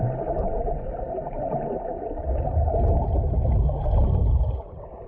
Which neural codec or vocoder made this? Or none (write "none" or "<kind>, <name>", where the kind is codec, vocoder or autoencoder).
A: none